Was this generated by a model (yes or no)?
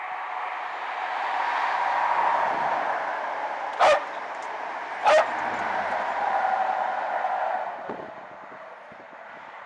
no